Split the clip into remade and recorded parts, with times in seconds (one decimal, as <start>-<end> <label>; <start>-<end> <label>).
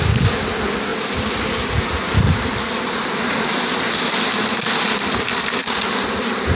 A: 0.0-0.9 recorded; 0.9-3.8 remade; 3.8-6.5 recorded